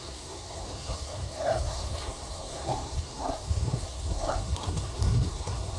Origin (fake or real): fake